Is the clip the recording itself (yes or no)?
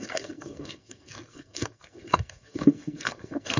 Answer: no